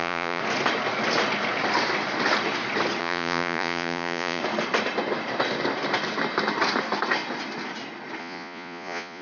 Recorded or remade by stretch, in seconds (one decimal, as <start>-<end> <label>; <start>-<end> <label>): 0.0-0.4 remade; 0.4-3.0 recorded; 3.0-4.4 remade; 4.4-8.2 recorded; 8.2-9.2 remade